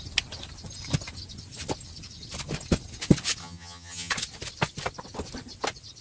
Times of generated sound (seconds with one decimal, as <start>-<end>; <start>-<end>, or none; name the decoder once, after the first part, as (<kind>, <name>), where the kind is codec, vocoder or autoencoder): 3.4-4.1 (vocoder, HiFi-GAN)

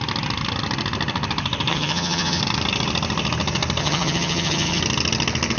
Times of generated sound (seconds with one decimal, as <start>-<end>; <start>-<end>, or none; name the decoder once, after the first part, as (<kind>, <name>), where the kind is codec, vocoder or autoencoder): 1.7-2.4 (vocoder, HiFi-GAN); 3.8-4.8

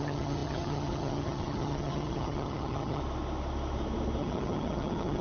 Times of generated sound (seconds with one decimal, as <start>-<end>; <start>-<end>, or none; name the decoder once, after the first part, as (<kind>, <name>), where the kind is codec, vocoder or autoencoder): 0.0-3.0 (vocoder, HiFi-GAN); 4.2-5.2

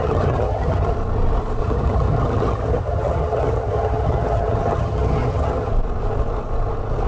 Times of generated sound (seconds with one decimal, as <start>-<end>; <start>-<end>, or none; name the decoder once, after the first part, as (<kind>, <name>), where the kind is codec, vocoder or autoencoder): 0.0-0.9 (vocoder, HiFi-GAN); 1.6-5.7